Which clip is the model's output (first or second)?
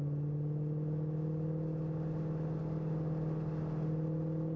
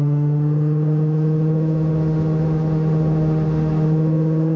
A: second